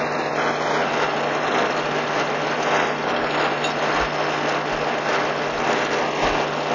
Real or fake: real